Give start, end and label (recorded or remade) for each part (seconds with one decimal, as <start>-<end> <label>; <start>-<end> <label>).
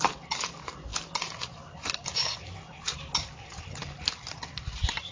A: 0.0-5.1 recorded